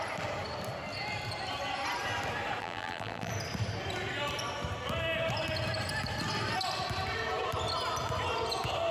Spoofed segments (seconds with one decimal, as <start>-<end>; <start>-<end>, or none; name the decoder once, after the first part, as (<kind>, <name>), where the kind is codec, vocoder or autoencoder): 2.6-3.3 (vocoder, BigVGAN v2)